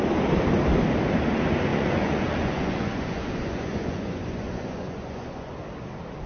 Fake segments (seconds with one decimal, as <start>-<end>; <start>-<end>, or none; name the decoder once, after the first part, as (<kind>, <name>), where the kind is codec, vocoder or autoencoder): 1.7-5.5 (vocoder, Vocos)